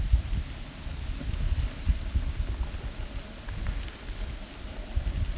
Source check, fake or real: real